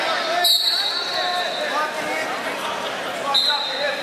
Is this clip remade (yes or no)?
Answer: no